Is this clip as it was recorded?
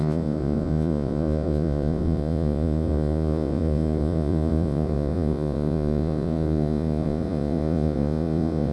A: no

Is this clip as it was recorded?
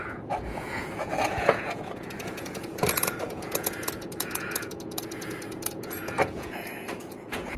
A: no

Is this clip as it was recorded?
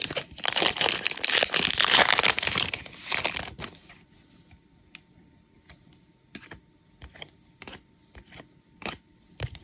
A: yes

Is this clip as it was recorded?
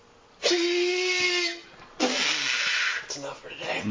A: yes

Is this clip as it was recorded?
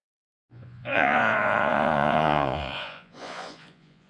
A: no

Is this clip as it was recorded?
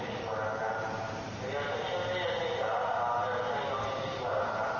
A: yes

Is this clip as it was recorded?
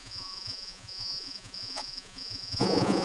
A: no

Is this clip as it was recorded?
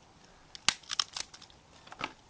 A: yes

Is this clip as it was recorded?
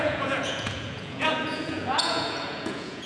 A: no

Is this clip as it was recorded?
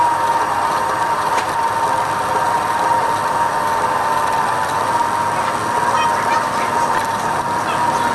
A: yes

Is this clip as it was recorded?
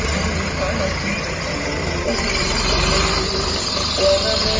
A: yes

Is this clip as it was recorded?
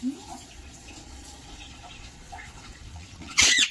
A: no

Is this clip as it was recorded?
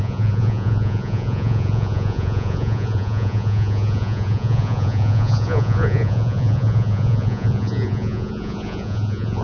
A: no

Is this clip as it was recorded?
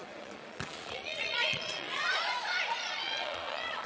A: no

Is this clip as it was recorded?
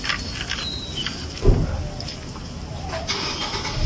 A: yes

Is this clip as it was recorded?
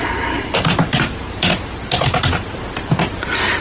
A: yes